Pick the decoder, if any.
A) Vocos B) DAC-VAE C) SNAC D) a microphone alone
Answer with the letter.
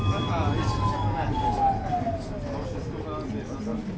D